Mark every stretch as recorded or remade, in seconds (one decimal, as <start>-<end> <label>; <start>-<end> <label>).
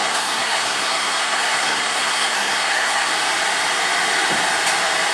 0.0-3.1 remade; 3.1-5.1 recorded